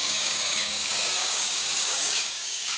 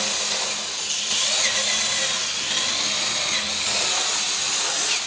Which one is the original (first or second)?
second